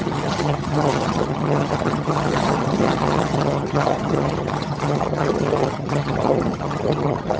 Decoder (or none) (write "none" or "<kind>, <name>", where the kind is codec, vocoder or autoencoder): vocoder, HiFi-GAN